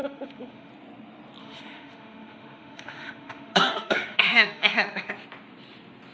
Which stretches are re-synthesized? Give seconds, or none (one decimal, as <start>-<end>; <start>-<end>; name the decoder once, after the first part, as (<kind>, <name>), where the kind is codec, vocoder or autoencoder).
0.0-0.7 (autoencoder, DAC-VAE); 1.4-5.1